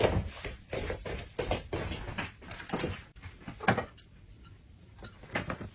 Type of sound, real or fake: real